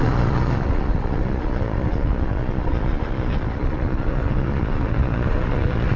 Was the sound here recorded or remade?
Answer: remade